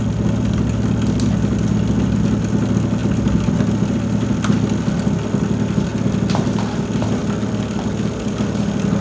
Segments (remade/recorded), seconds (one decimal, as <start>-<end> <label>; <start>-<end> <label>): 0.0-7.2 recorded; 7.2-7.9 remade; 7.9-9.0 recorded